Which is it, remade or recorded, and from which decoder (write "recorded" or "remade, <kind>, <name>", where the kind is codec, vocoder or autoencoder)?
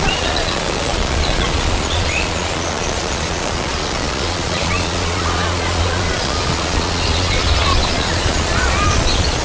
remade, vocoder, Vocos